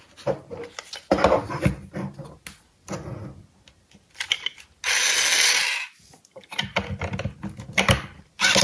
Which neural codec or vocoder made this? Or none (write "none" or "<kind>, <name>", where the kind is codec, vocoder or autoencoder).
none